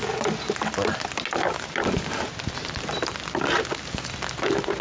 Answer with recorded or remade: recorded